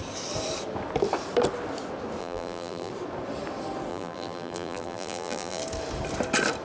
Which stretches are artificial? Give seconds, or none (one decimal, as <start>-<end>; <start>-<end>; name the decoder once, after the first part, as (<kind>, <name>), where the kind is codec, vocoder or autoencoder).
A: 2.2-2.9 (vocoder, BigVGAN v2); 3.9-5.6